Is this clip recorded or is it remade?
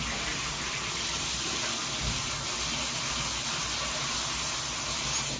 recorded